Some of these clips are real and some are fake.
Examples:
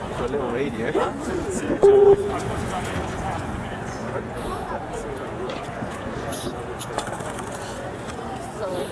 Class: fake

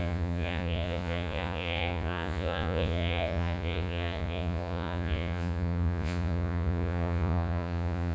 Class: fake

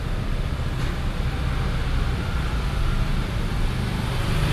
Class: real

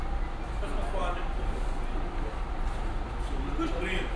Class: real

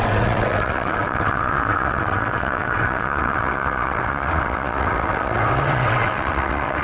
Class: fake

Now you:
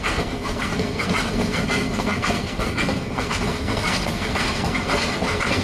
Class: fake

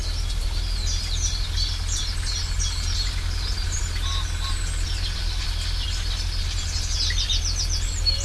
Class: real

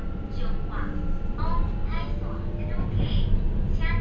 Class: real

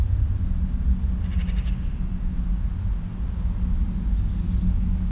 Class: real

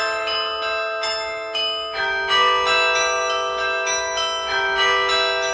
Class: real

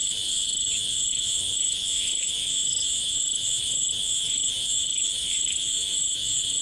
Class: fake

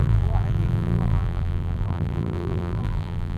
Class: fake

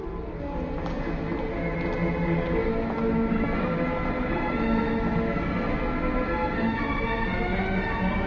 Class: real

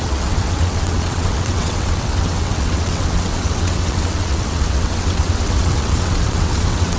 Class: fake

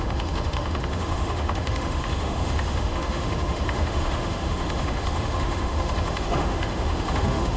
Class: fake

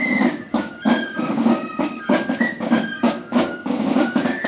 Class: fake